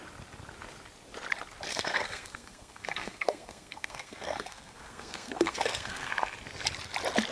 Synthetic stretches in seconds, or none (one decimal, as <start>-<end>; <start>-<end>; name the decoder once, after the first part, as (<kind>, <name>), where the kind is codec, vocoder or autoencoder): 1.7-6.1 (codec, SNAC)